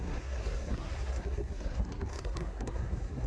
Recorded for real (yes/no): no